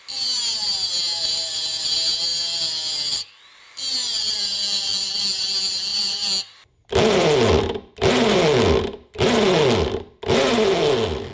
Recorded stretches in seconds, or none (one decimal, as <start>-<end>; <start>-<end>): 0.0-4.0; 5.2-5.9; 7.6-11.3